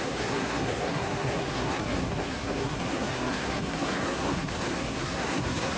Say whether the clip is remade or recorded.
remade